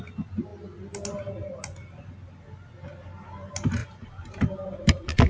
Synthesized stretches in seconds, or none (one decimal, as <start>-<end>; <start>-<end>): 3.8-5.3